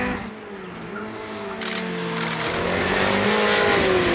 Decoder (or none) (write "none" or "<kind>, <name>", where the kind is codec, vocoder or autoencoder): none